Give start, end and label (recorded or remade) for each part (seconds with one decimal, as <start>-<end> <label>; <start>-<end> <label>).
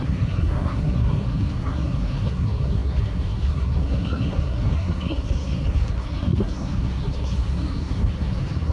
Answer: 0.0-8.7 remade